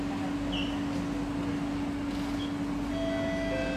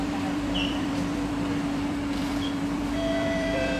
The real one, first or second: first